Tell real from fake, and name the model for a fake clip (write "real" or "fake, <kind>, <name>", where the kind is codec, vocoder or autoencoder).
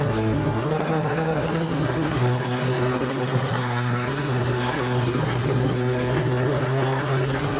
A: fake, codec, SNAC